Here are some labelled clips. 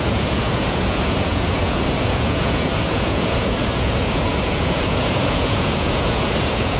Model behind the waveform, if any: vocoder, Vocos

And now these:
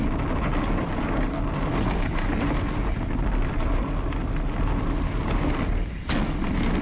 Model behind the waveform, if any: none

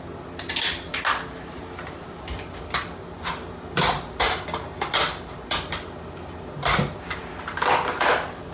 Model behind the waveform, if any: none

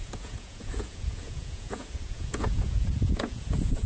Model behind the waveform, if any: vocoder, Vocos